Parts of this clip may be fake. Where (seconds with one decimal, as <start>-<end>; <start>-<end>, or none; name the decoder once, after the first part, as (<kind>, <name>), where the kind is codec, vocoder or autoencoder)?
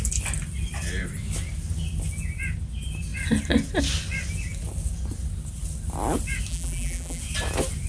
6.5-7.2 (vocoder, BigVGAN v2)